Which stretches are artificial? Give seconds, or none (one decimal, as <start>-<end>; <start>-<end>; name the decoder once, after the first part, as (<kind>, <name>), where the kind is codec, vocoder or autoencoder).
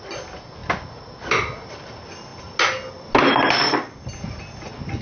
none